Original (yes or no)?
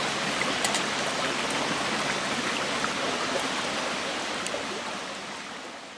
yes